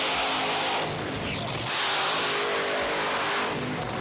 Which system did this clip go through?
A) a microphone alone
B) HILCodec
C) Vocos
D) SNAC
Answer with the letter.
A